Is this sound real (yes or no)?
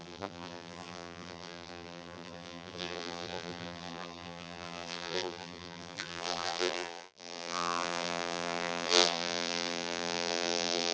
no